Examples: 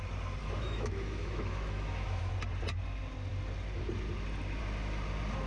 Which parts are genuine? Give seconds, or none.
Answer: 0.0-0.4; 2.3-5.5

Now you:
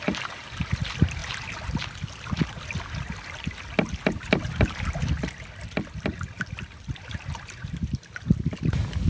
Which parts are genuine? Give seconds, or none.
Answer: 0.0-9.1

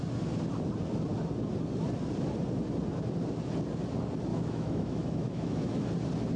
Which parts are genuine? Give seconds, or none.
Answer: 0.0-4.3; 5.9-6.4

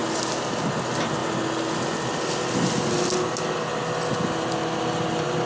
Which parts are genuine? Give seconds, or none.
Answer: 0.0-5.5

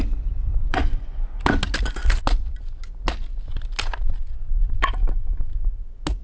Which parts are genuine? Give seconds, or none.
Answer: 0.0-0.5; 1.4-6.2

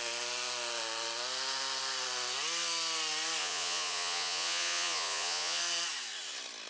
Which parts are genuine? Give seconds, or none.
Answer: 0.0-3.4; 5.6-6.7